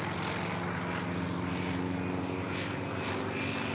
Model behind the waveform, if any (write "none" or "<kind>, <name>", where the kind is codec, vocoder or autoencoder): none